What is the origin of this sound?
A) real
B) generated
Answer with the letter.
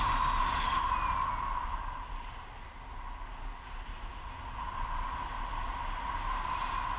A